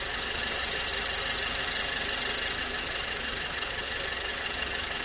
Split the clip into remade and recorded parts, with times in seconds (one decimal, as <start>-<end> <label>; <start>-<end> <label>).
0.0-0.9 remade; 0.9-2.6 recorded; 2.6-5.0 remade